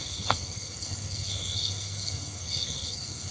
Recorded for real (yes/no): no